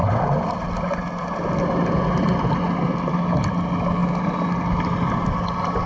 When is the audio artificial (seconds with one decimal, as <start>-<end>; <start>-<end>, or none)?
none